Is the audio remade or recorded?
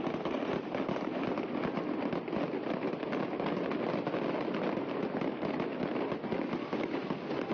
recorded